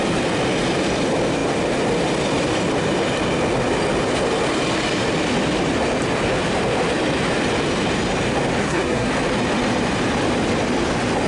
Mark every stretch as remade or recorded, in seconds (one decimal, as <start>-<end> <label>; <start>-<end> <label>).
0.0-8.6 recorded; 8.6-9.1 remade; 9.1-11.3 recorded